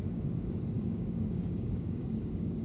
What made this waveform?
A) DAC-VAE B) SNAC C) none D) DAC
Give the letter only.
D